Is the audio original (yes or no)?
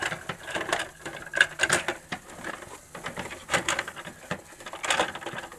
no